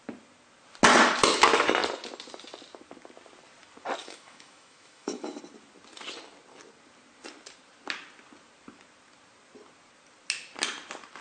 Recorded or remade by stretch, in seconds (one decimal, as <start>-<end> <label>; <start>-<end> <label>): 0.0-4.0 recorded; 4.0-5.4 remade; 5.4-11.2 recorded